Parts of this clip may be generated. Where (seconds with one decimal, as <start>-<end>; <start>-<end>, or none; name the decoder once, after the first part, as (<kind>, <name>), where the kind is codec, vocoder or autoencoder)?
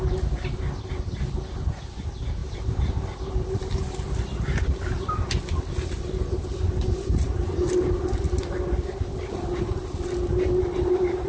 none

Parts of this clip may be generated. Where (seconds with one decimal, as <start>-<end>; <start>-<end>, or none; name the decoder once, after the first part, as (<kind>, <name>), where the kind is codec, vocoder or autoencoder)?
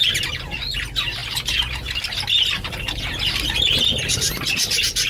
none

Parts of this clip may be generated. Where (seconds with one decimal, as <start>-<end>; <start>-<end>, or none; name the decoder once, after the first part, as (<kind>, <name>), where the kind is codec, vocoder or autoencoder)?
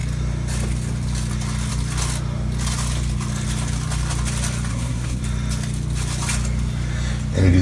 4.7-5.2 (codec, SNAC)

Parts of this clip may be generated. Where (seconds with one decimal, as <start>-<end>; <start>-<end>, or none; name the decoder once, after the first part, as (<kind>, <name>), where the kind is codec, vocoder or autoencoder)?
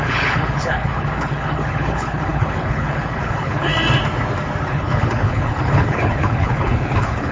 0.0-3.7 (codec, HILCodec); 4.7-7.3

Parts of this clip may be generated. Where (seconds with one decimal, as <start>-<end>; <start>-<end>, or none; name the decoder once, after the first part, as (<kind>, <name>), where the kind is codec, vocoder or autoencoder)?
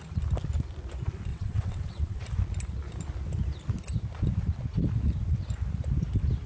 1.3-2.2 (vocoder, WaveNeXt)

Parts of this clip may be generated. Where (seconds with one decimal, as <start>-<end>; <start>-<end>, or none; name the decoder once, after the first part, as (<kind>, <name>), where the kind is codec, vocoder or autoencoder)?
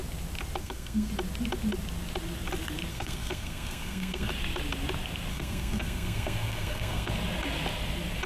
0.6-1.1 (codec, SNAC); 2.9-4.3; 5.3-7.1